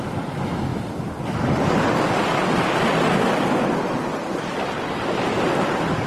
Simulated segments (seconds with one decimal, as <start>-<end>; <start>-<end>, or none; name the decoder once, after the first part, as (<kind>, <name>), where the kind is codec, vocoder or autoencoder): none